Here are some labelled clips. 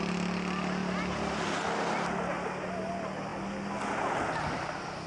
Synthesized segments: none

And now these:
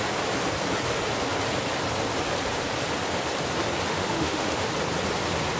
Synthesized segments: 3.9-4.7 (autoencoder, DAC-VAE)

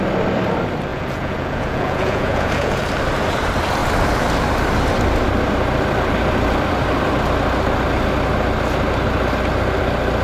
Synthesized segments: 0.9-2.8 (vocoder, Vocos)

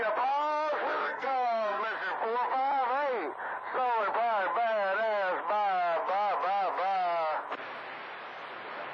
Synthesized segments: 1.0-1.8 (codec, SNAC)

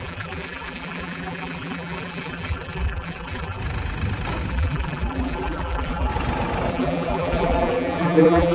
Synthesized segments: 0.0-3.6 (vocoder, BigVGAN v2); 4.5-6.1; 6.7-8.5

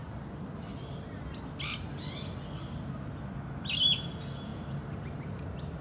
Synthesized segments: none